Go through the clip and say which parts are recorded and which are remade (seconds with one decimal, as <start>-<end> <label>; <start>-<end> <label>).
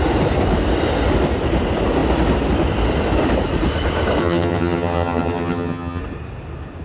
0.0-4.2 recorded; 4.2-6.0 remade; 6.0-6.8 recorded